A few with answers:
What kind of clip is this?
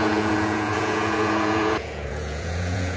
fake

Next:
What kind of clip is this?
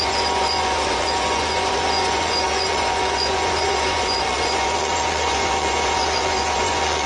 fake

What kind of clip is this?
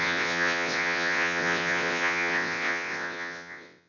fake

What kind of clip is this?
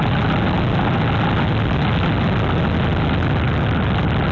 real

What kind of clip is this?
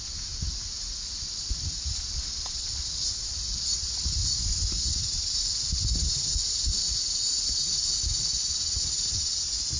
real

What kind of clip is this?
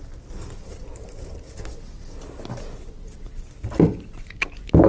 real